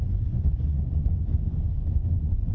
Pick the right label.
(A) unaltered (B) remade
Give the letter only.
B